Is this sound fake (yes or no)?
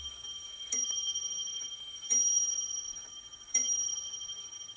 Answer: yes